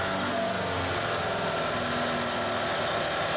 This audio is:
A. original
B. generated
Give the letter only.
A